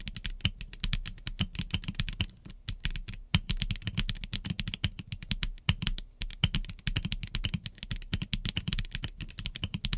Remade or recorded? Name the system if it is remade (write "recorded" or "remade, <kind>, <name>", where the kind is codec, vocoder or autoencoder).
recorded